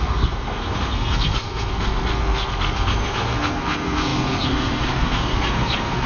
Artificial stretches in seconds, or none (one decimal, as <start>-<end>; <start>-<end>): 0.0-6.1